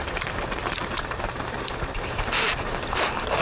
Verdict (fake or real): fake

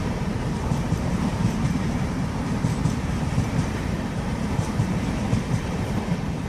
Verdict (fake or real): fake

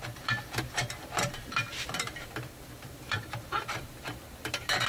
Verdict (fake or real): fake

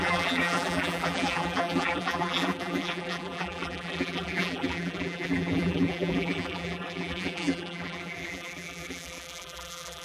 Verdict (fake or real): fake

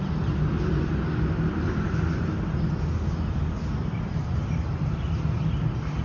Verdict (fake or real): real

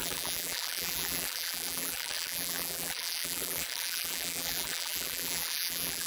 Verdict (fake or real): fake